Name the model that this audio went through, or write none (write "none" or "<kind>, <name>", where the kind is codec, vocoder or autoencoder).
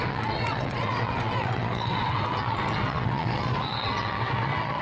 vocoder, WaveNeXt